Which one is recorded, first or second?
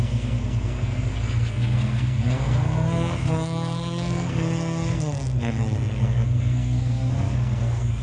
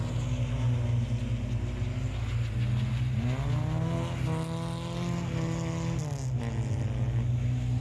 second